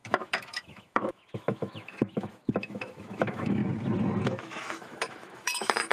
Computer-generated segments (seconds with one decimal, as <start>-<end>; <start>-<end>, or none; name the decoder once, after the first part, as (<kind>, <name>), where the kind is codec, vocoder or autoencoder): 0.0-3.6 (autoencoder, DAC-VAE); 4.2-5.9